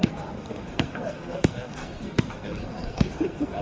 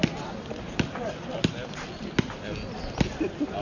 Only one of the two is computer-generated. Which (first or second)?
first